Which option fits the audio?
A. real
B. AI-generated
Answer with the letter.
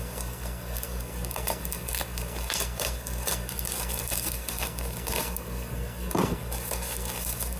B